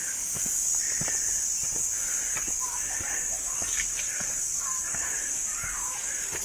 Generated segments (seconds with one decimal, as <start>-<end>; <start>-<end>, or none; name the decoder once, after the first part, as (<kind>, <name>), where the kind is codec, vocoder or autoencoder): 2.3-6.4 (codec, DAC)